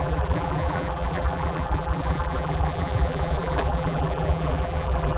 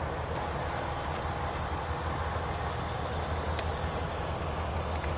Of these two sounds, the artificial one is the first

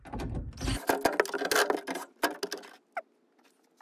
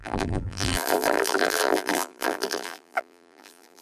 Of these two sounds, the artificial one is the second